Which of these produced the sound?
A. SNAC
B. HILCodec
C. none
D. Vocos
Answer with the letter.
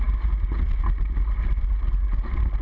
C